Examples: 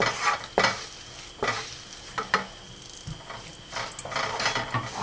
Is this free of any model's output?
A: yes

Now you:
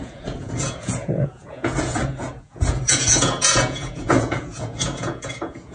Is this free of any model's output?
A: no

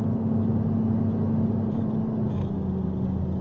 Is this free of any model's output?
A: yes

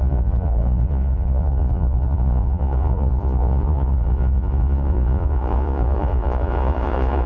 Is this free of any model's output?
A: no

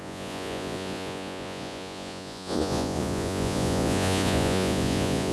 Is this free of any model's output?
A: no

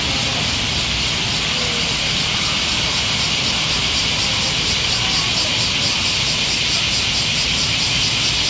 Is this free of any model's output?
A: yes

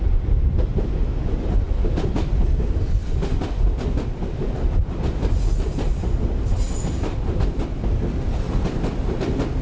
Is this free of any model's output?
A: yes